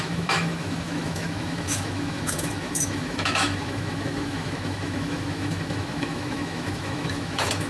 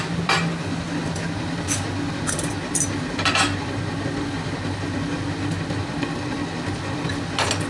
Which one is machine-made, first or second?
first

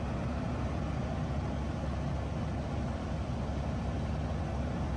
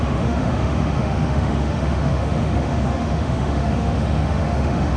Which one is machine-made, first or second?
second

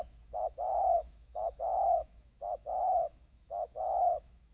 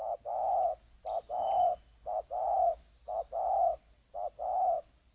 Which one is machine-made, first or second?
first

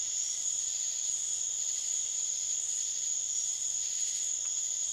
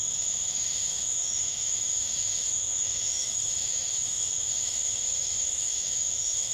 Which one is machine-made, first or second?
second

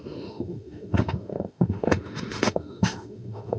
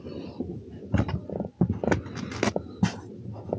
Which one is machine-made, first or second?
first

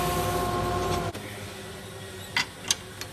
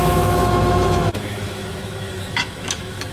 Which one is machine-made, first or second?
second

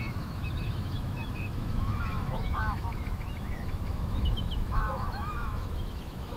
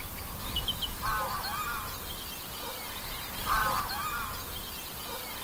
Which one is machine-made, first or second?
first